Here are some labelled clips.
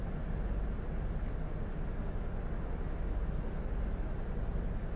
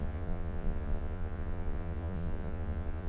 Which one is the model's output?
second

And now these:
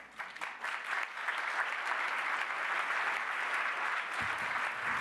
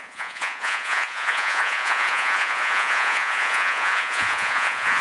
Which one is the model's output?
second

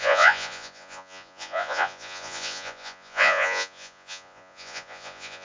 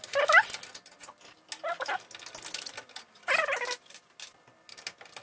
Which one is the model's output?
first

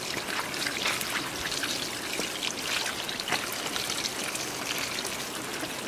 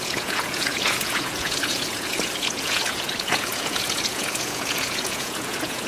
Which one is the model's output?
second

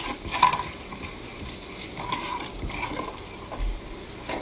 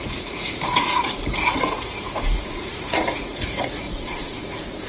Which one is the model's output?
second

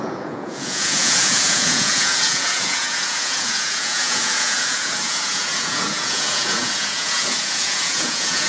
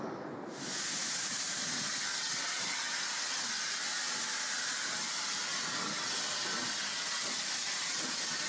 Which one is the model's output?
first